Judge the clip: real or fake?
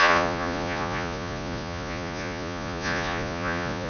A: fake